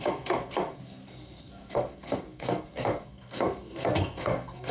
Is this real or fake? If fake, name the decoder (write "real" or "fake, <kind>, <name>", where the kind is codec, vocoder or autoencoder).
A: fake, codec, SNAC